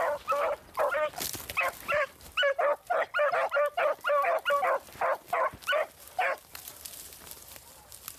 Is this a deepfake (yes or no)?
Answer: no